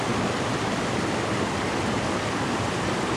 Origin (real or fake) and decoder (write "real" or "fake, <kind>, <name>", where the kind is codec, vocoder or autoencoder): real